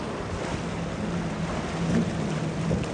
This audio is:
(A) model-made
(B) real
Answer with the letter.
B